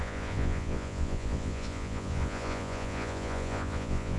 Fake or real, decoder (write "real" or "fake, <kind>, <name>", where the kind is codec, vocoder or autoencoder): fake, vocoder, Vocos